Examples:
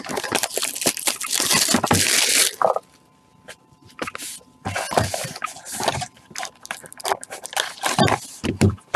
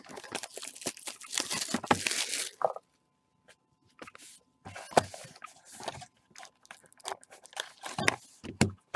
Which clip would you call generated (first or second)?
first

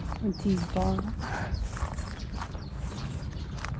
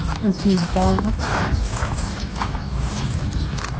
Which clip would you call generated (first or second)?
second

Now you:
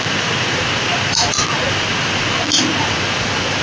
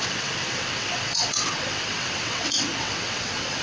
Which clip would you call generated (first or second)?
second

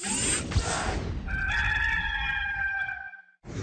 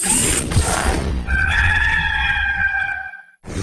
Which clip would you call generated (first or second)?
second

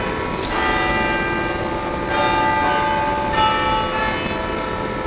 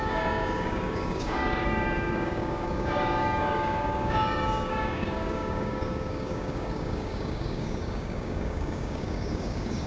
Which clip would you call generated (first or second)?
second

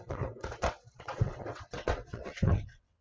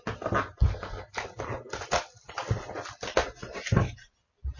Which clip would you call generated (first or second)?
first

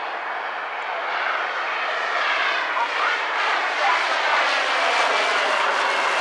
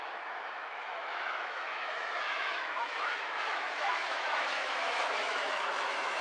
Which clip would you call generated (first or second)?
second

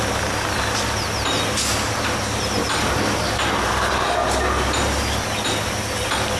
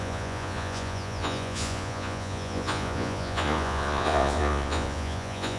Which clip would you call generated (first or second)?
second